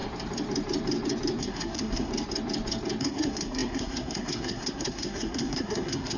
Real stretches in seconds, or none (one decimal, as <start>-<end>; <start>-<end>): 0.0-1.4; 2.1-3.0